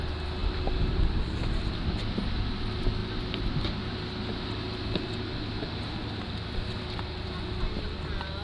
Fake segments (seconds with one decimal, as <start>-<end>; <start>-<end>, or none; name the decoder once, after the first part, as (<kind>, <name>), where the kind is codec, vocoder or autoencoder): none